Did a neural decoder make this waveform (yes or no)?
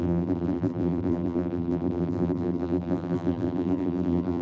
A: yes